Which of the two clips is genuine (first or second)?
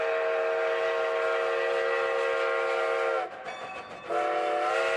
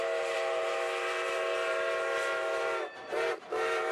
first